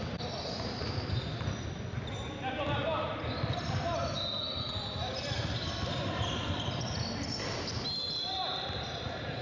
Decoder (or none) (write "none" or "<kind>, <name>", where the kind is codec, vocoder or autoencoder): none